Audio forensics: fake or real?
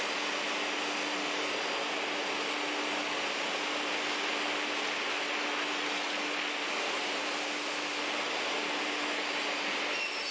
real